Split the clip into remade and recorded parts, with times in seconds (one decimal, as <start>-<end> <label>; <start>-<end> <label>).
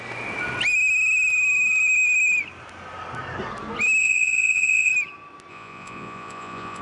0.0-4.0 recorded; 4.0-4.9 remade; 4.9-5.5 recorded; 5.5-6.8 remade